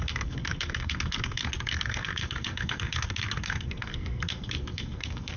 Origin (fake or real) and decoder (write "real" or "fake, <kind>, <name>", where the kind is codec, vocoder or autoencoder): fake, codec, SNAC